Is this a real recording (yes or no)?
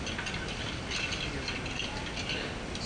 yes